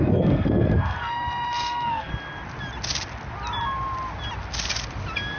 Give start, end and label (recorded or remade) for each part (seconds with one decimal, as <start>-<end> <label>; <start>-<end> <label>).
0.0-2.1 remade; 2.1-5.4 recorded